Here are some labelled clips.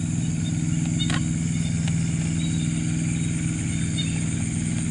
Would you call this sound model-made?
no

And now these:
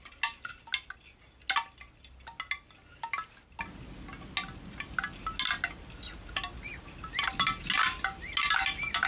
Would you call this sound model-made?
no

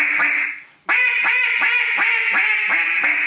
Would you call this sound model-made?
no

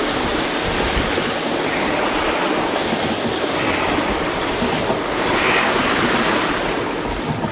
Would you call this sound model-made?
no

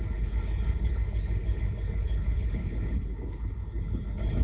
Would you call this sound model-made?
yes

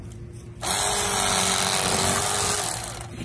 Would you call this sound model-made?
no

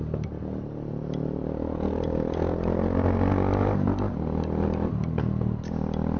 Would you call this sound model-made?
no